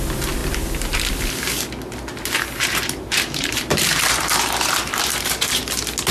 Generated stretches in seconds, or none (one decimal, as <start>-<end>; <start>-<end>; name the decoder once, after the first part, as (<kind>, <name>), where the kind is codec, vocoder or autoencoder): 2.1-5.6 (vocoder, BigVGAN v2)